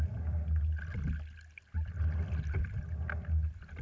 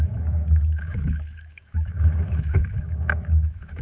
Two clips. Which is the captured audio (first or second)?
first